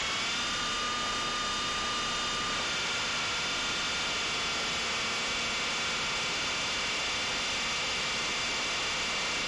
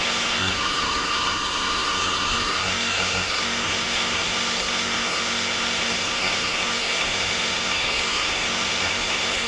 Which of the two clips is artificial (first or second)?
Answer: second